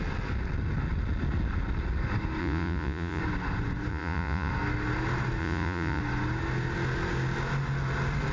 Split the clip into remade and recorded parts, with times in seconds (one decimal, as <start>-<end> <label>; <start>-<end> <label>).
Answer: 0.0-2.4 recorded; 2.4-3.2 remade; 3.2-3.9 recorded; 3.9-4.5 remade; 4.5-5.4 recorded; 5.4-6.0 remade; 6.0-8.3 recorded